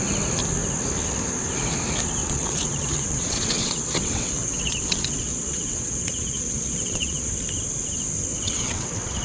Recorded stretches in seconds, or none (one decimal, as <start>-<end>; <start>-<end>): 0.0-2.2; 7.3-8.3